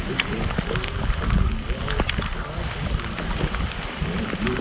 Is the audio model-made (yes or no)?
yes